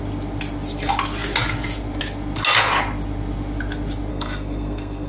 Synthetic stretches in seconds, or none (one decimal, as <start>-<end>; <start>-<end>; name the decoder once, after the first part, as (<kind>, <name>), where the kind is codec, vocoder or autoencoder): 4.1-5.1 (codec, SNAC)